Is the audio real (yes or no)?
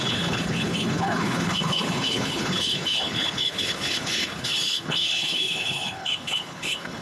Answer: no